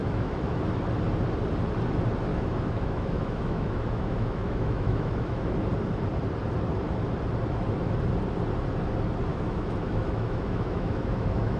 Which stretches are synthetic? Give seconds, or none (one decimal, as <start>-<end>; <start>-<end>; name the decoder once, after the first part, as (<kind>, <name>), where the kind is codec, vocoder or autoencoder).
0.0-0.6 (autoencoder, DAC-VAE); 2.3-5.5; 9.3-11.6